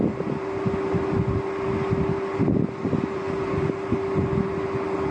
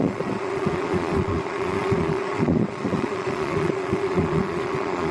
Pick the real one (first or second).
first